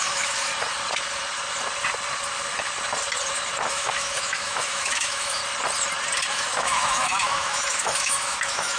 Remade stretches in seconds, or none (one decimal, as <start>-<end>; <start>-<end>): 0.0-0.5; 3.7-5.4; 6.3-8.8

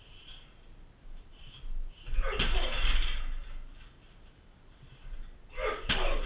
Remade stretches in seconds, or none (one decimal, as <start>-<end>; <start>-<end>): none

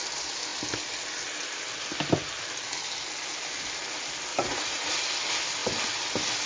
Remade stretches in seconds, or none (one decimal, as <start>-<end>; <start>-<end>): 4.3-4.9

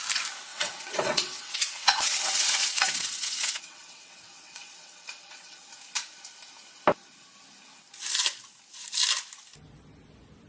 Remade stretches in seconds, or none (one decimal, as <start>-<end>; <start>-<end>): 0.5-5.7

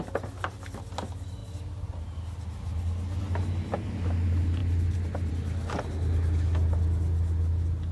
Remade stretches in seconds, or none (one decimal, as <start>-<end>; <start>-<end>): none

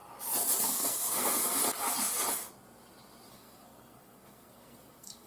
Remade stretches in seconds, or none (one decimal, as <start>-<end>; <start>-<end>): 0.6-1.6; 3.3-5.3

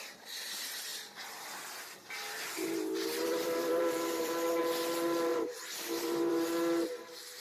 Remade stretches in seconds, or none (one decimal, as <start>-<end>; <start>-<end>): 0.9-4.6; 5.3-6.3